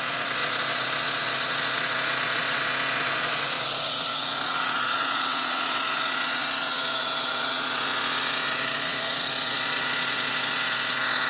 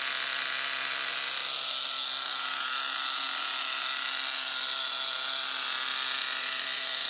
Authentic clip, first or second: second